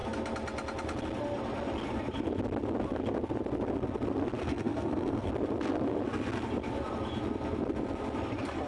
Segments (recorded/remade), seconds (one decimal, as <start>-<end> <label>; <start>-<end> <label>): 0.0-4.4 recorded; 4.4-5.3 remade; 5.3-8.7 recorded